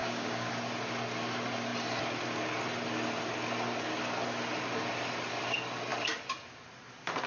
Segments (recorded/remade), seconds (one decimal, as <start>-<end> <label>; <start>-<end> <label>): 0.0-0.5 remade; 0.5-7.3 recorded